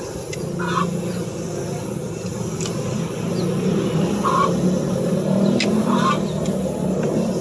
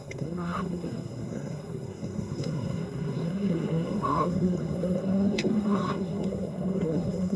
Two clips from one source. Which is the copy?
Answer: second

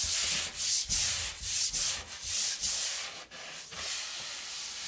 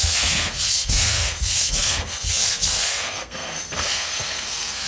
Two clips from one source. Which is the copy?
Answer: second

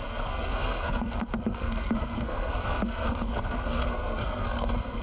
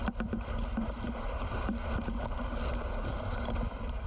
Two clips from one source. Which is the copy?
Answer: first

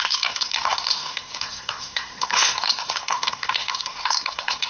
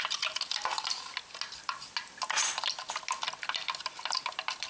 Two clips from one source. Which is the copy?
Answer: first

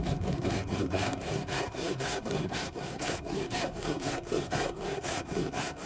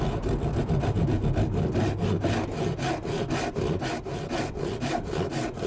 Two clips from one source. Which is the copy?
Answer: first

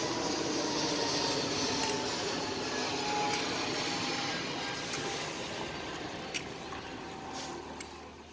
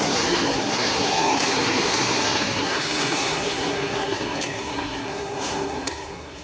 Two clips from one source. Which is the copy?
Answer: second